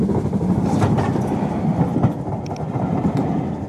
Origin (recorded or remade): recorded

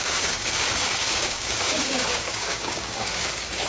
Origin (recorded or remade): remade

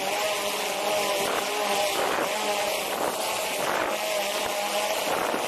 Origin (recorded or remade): recorded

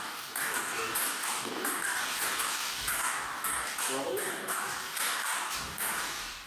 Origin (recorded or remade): remade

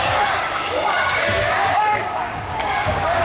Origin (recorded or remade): remade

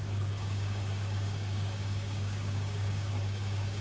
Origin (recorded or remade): remade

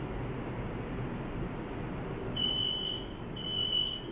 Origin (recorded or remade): recorded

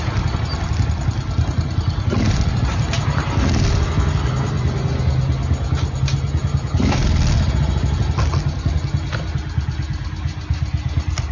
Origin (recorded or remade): recorded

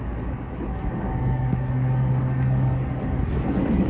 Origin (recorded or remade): remade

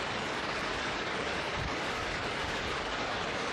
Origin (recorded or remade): remade